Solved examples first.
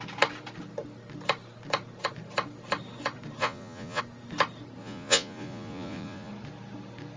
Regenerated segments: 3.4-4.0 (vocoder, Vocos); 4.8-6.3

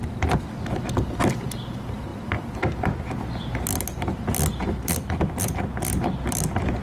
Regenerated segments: none

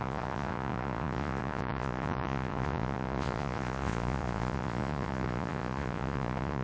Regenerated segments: 0.0-6.6 (vocoder, Vocos)